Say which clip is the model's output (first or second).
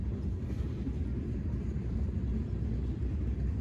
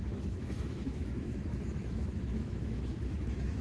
second